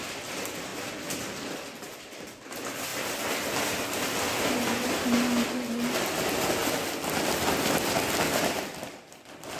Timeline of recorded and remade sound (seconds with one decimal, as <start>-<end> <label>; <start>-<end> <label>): 0.0-9.6 recorded